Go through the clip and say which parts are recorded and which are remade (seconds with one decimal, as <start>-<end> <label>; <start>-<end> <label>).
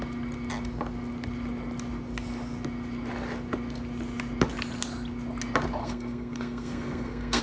0.0-5.8 recorded; 5.8-7.4 remade